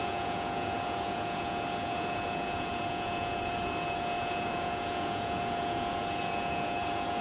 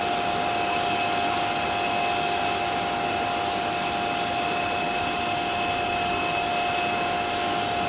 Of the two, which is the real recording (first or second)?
second